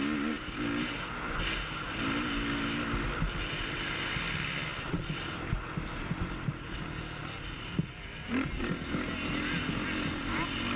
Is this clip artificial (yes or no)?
no